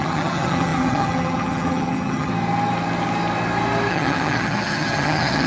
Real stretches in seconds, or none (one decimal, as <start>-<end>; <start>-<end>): 2.3-3.9